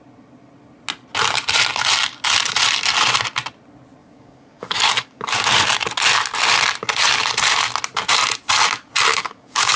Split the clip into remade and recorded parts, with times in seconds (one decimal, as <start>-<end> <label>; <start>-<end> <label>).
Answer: 0.0-4.0 recorded; 4.0-5.4 remade; 5.4-9.1 recorded; 9.1-9.8 remade